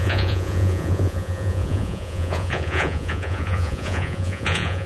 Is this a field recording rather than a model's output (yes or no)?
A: no